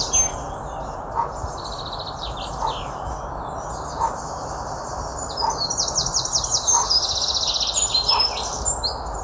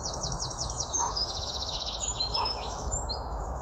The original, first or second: first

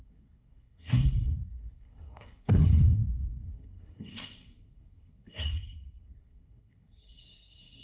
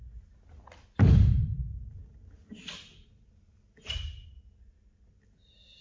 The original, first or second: second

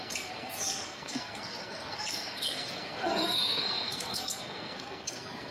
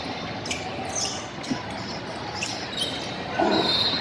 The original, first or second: second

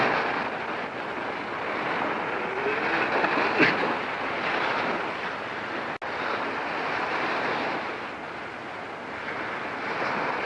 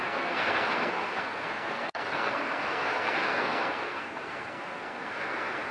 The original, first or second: first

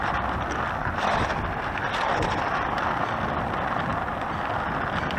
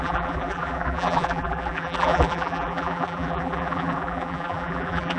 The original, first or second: first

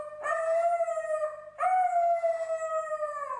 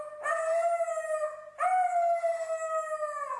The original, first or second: second